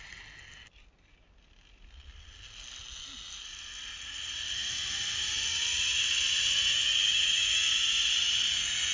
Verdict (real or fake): real